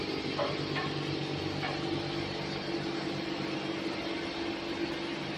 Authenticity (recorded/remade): recorded